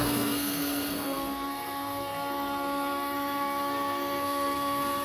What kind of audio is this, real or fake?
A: fake